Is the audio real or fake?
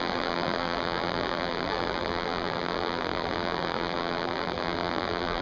fake